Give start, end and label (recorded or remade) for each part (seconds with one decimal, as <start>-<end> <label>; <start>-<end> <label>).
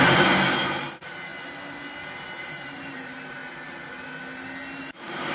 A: 0.0-1.3 remade; 1.3-2.4 recorded; 2.4-3.4 remade; 3.4-4.8 recorded; 4.8-5.3 remade